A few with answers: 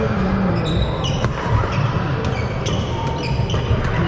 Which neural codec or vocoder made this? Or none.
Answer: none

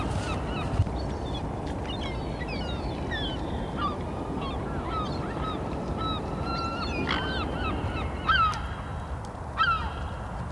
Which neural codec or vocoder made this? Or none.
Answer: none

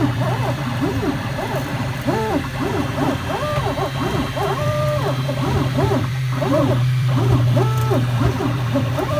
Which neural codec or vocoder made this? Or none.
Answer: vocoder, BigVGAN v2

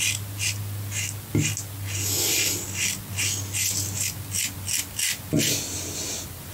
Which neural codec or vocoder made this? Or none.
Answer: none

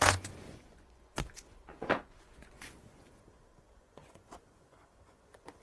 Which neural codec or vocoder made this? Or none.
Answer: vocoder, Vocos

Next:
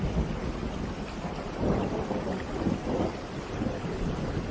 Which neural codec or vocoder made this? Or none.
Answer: none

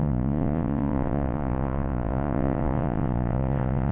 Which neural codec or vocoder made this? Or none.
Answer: vocoder, Vocos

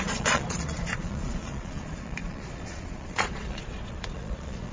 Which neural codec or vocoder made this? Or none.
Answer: vocoder, Vocos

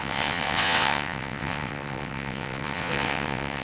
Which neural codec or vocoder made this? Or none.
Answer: vocoder, WaveNeXt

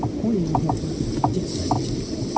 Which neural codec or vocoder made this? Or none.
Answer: none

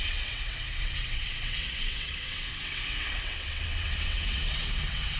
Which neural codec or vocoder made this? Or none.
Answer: vocoder, WaveNeXt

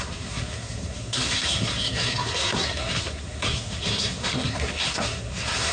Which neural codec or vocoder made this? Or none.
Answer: codec, SNAC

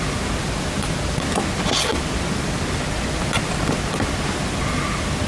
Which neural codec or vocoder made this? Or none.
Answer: none